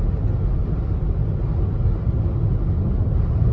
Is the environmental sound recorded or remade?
recorded